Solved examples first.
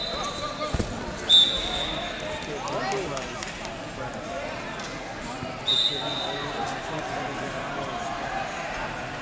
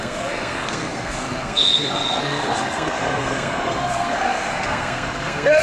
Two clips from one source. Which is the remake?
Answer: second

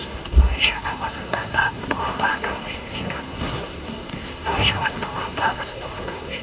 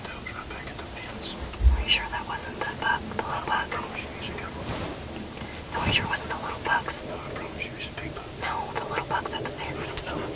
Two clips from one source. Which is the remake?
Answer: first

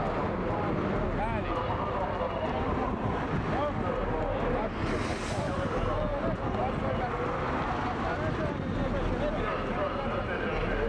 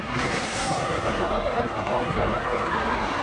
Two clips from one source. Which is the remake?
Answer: second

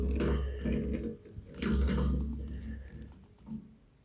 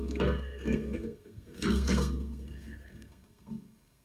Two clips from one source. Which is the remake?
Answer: second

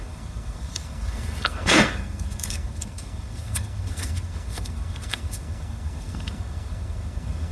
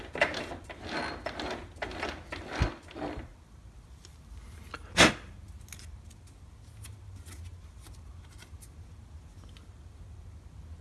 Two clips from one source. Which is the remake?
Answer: first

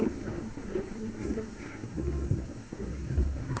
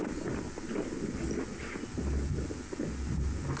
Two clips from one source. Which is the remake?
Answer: first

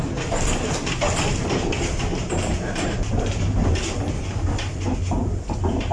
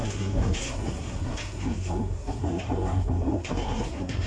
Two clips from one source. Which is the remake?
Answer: second